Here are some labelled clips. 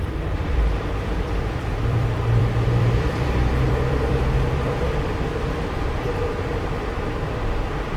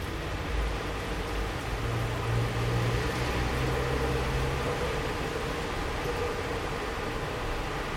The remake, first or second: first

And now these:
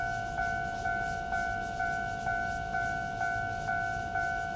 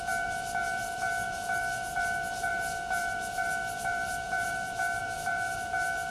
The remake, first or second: second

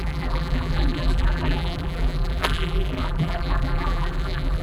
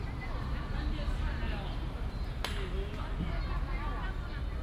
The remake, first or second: first